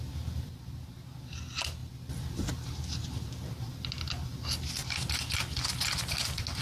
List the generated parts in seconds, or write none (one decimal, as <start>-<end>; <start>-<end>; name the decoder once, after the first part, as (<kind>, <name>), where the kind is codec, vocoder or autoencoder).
none